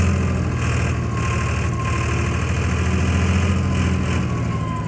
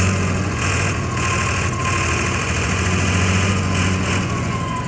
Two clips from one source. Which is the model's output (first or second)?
second